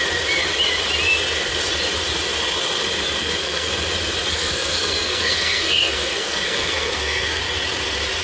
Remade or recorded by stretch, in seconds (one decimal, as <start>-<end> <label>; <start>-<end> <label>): 0.0-3.2 recorded; 3.2-3.7 remade; 3.7-4.3 recorded; 4.3-7.4 remade; 7.4-8.2 recorded